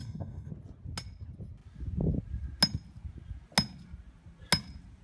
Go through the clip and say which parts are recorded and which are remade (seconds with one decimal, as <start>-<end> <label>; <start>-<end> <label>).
0.0-0.5 remade; 0.5-5.0 recorded

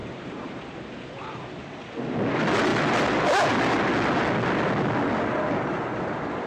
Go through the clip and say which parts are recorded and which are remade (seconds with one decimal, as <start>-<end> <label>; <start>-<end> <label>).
0.0-0.6 remade; 0.6-6.5 recorded

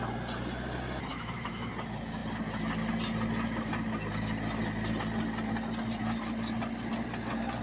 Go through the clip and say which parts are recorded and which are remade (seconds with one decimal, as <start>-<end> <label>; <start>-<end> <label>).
0.0-1.1 recorded; 1.1-1.7 remade; 1.7-7.6 recorded